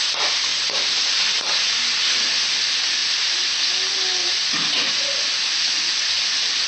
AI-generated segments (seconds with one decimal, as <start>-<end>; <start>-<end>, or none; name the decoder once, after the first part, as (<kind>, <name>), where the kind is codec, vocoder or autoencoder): 0.5-2.4 (vocoder, BigVGAN v2); 3.0-3.5; 4.2-4.9